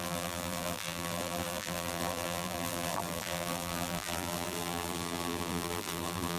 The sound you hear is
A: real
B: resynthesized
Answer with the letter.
B